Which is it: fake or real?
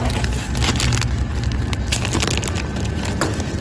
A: real